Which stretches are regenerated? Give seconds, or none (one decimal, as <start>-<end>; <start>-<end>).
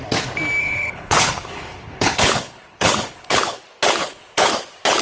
0.6-3.6; 4.0-4.5